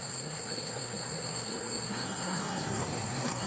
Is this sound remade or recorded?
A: remade